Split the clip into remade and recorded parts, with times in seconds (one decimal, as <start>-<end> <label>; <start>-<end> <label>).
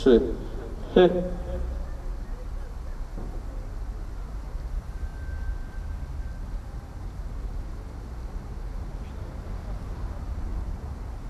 0.0-11.3 recorded